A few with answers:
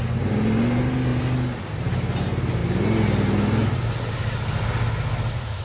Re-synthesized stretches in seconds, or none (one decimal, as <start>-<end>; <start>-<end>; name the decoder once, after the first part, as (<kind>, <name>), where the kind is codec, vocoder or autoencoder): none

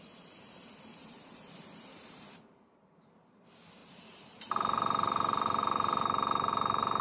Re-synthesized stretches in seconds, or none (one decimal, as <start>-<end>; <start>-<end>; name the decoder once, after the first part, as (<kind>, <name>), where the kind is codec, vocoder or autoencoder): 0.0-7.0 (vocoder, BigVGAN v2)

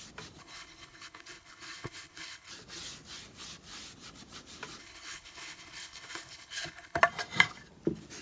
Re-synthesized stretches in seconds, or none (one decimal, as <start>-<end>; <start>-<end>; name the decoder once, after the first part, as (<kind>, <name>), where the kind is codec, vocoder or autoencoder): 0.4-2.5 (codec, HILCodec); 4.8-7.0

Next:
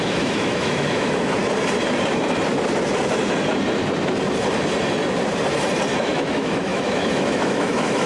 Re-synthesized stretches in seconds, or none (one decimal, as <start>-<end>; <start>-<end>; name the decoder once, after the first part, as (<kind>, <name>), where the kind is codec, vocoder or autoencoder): 0.0-1.4 (autoencoder, DAC-VAE); 6.0-8.1

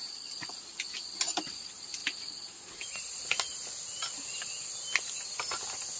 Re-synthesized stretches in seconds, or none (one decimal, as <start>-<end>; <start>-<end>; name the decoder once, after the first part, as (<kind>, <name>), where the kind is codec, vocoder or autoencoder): none

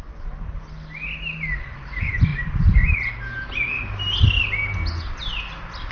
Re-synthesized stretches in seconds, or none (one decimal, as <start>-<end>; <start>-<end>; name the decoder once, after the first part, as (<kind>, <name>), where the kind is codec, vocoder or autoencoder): none